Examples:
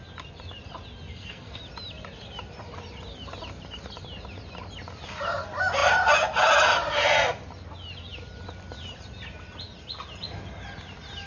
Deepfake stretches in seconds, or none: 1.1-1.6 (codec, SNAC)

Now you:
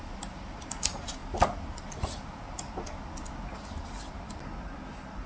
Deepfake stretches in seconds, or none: none

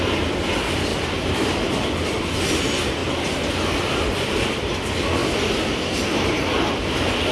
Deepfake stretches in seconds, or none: 0.9-2.2 (vocoder, BigVGAN v2)

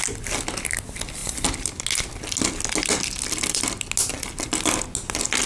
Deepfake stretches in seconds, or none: none

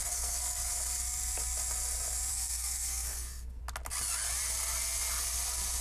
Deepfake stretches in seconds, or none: 0.0-0.7 (codec, SNAC); 2.3-3.6

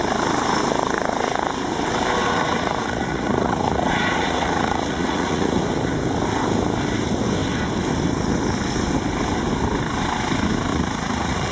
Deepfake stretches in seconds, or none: 2.2-5.6 (vocoder, Vocos); 10.7-11.5